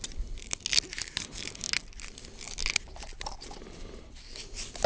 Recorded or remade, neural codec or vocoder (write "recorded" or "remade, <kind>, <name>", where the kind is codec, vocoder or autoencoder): recorded